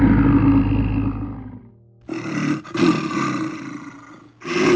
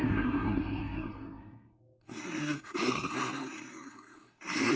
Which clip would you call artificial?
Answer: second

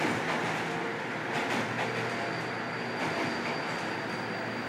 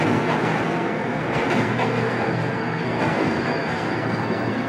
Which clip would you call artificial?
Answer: second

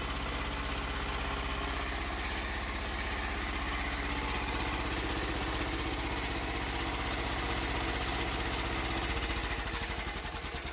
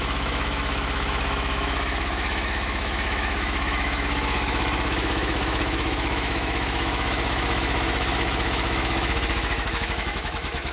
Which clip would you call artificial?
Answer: second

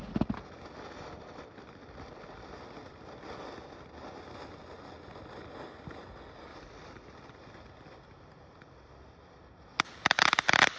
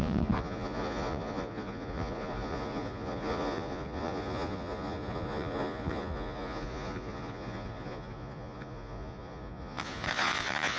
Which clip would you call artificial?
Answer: second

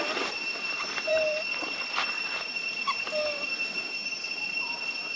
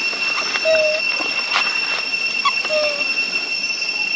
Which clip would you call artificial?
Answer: first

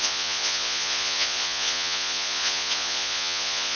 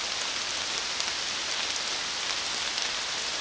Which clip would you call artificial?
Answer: first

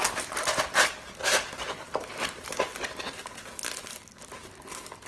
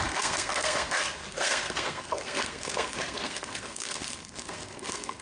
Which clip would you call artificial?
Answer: second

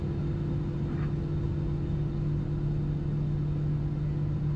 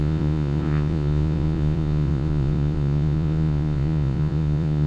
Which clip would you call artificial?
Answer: second